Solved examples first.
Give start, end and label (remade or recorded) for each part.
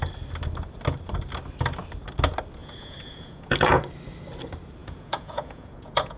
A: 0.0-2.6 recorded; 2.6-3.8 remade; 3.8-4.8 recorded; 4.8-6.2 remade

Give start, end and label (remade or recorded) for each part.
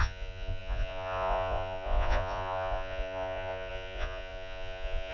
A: 0.0-5.1 remade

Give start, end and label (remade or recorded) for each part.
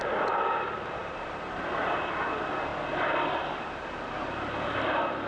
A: 0.0-5.3 recorded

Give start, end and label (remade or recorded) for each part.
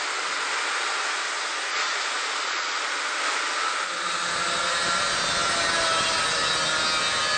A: 0.0-1.7 recorded; 1.7-2.8 remade; 2.8-7.4 recorded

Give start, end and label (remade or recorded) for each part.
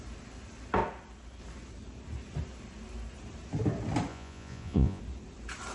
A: 0.0-4.1 recorded; 4.1-5.0 remade; 5.0-5.7 recorded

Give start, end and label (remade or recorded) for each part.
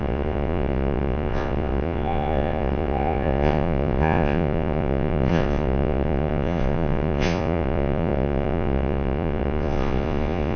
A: 0.0-10.6 remade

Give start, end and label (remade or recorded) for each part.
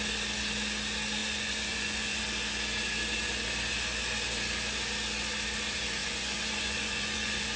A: 0.0-1.2 recorded; 1.2-2.2 remade; 2.2-6.0 recorded; 6.0-7.6 remade